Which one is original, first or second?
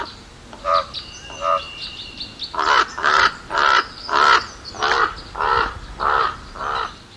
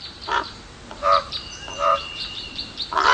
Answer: first